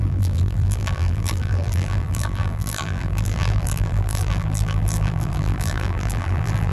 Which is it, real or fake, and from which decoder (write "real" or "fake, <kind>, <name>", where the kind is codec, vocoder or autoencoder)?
fake, vocoder, BigVGAN v2